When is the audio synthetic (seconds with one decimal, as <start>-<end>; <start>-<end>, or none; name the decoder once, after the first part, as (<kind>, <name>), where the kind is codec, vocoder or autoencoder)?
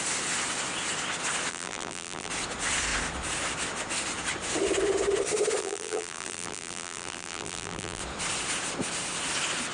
1.5-2.3 (vocoder, BigVGAN v2); 5.6-8.0